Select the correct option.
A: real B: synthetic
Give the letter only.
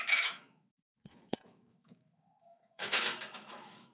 B